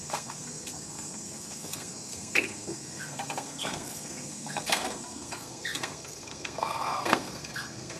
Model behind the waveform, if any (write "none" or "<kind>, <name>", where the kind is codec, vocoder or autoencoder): codec, SNAC